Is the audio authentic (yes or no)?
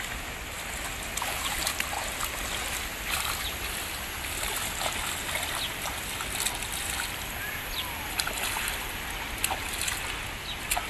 yes